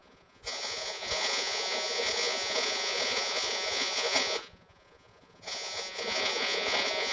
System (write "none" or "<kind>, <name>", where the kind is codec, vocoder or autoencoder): vocoder, Vocos